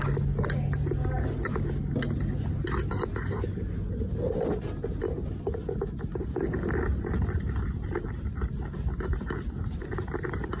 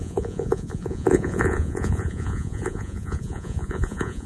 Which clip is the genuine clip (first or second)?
first